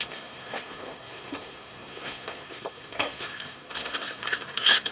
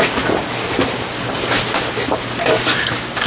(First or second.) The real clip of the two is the second